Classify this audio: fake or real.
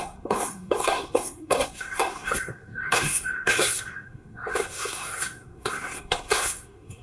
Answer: fake